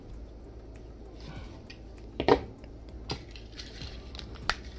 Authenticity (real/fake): real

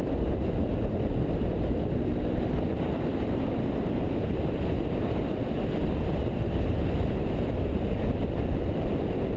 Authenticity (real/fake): real